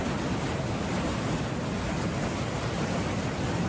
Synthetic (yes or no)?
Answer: no